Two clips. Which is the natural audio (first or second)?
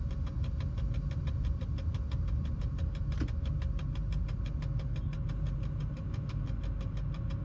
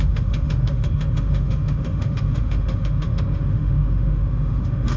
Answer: first